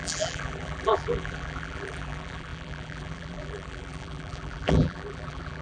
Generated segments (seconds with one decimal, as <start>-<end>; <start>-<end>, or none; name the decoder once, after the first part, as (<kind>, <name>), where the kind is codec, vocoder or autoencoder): 0.0-5.6 (vocoder, BigVGAN v2)